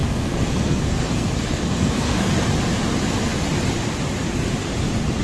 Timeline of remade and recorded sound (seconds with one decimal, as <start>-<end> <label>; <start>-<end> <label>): 0.0-2.3 remade; 2.3-5.2 recorded